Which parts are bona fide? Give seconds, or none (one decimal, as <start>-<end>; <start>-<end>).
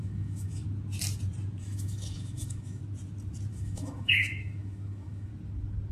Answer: 0.6-1.6; 2.8-3.5; 5.3-5.9